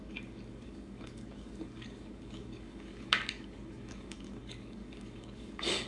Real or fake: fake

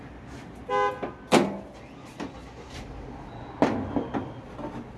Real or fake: real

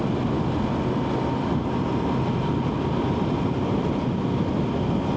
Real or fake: real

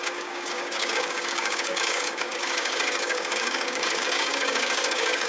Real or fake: fake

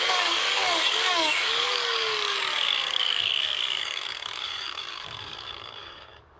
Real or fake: fake